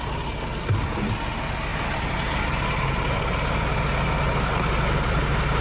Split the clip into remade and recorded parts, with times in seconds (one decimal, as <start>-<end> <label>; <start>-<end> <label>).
0.0-1.7 recorded; 1.7-3.5 remade; 3.5-5.6 recorded